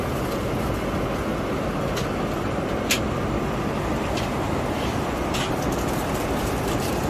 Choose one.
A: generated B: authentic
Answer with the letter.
B